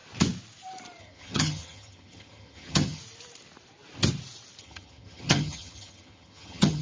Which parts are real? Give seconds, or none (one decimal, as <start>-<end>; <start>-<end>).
0.0-1.0; 3.0-4.6